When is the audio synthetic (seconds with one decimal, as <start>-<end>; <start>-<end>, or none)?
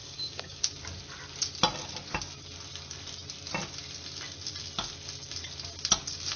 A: 0.0-0.6